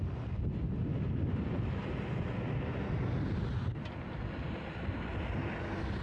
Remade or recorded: recorded